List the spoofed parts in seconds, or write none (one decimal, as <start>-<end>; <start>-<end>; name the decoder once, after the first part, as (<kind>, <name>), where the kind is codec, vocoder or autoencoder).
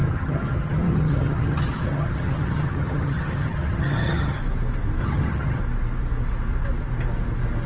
0.0-4.4 (vocoder, HiFi-GAN); 5.0-5.6